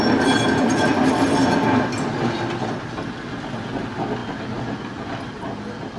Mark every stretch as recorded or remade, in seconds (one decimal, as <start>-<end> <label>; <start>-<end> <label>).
0.0-6.0 recorded